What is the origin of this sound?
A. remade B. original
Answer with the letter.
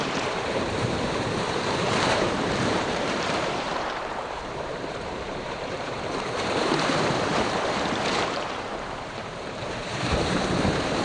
A